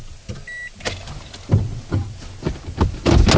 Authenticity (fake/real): real